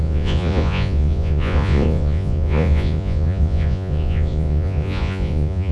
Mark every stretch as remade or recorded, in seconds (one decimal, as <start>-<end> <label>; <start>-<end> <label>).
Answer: 0.0-5.7 remade